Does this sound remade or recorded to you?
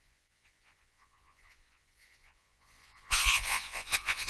remade